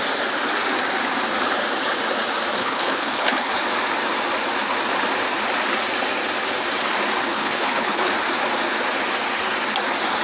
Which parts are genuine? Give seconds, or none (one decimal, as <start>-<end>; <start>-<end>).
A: 0.0-2.6; 3.5-7.3; 8.1-10.2